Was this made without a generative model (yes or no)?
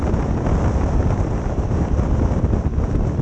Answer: yes